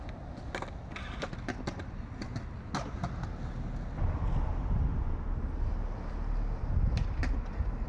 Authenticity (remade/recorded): recorded